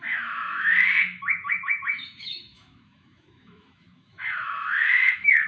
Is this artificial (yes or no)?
yes